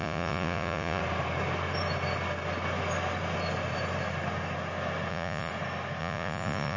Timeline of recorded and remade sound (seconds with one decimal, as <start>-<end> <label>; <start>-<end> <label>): 0.0-1.0 remade; 1.0-5.1 recorded; 5.1-5.5 remade; 5.5-6.0 recorded; 6.0-6.8 remade

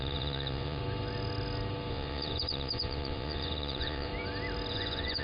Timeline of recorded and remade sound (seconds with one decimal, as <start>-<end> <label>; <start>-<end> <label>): 0.0-0.8 remade; 0.8-1.9 recorded; 1.9-4.1 remade; 4.1-4.7 recorded; 4.7-5.2 remade